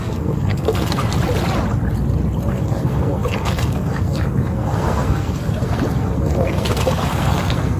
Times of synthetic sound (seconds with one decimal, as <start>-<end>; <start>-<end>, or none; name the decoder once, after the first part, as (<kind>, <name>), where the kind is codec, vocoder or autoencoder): 0.0-1.0 (codec, SNAC); 2.5-7.8